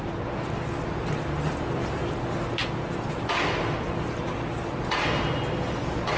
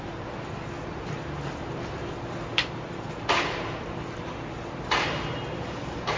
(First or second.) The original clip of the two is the first